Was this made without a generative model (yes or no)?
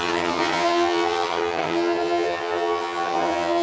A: no